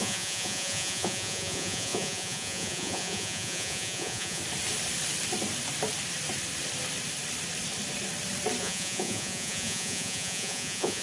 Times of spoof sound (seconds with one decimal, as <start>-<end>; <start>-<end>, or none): 0.0-4.4; 8.6-11.0

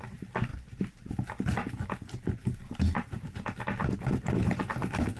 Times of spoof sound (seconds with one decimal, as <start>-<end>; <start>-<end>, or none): none

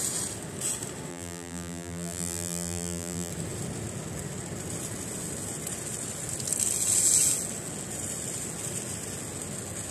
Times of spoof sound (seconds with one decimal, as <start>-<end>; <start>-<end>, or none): 1.1-3.3

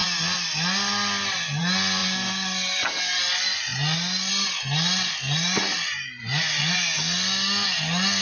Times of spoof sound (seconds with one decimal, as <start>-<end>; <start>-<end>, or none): 5.6-6.2

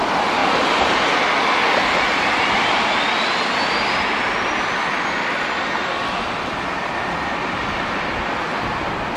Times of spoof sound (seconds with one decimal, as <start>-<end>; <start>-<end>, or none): none

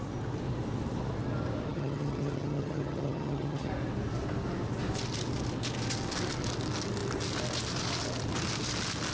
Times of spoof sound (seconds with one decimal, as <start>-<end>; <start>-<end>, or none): 1.7-3.7

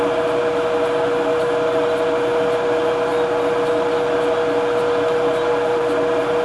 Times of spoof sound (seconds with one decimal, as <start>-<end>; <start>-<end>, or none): none